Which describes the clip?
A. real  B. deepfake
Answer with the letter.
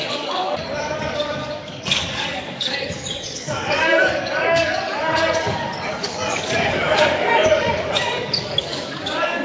B